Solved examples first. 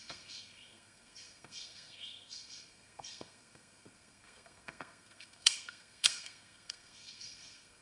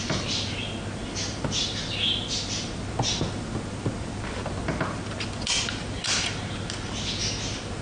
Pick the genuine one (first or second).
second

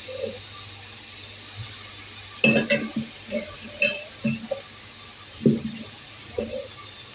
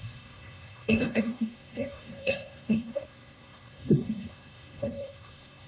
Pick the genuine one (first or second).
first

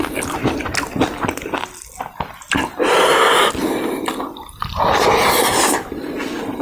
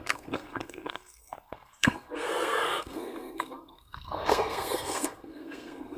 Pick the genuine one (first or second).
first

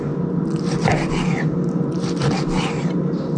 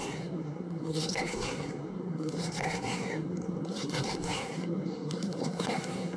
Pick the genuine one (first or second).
first